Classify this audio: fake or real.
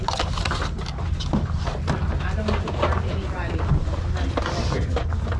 real